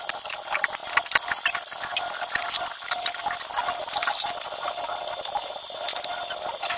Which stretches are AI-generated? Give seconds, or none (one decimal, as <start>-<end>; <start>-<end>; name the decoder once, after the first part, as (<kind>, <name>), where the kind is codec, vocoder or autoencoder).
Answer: none